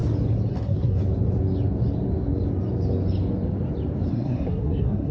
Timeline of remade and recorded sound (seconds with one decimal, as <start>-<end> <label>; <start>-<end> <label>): 0.0-0.5 recorded; 0.5-1.0 remade; 1.0-4.1 recorded; 4.1-5.1 remade